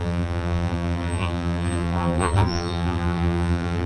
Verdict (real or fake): fake